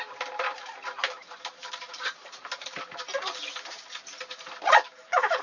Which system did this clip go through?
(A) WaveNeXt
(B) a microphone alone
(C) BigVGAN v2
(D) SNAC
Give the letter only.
C